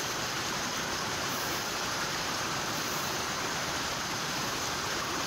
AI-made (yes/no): yes